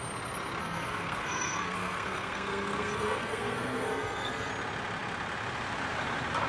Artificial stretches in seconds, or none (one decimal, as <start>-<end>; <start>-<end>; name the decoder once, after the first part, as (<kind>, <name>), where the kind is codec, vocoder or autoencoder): 0.6-4.5 (codec, SNAC)